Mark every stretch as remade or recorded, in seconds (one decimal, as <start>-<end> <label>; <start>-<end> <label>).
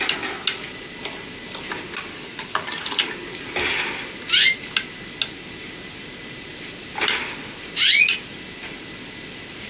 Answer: 0.0-2.1 recorded; 2.1-3.1 remade; 3.1-9.7 recorded